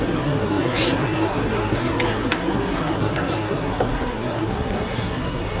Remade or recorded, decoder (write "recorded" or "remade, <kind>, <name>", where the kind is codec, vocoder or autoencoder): remade, codec, SNAC